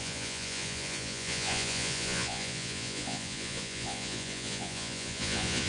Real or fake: fake